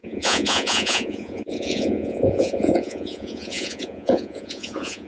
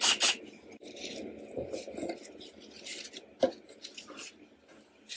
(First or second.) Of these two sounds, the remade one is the first